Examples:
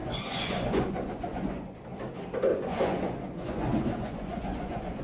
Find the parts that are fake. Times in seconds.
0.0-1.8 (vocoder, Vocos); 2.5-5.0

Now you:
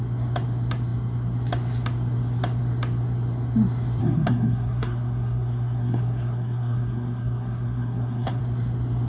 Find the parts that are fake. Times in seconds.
4.0-8.4 (codec, SNAC)

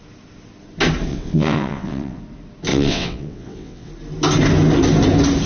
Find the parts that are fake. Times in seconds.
1.1-2.2 (vocoder, WaveNeXt); 2.7-3.9

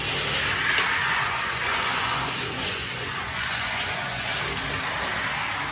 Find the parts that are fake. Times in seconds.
1.0-4.4 (vocoder, Vocos)

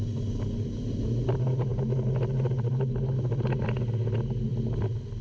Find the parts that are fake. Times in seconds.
none

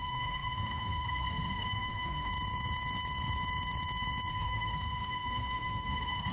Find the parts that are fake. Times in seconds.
0.0-2.3 (codec, SNAC); 4.3-6.3

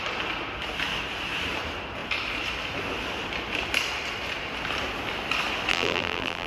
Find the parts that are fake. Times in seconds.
5.7-6.5 (vocoder, BigVGAN v2)